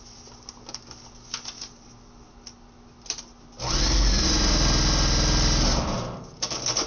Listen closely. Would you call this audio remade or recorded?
recorded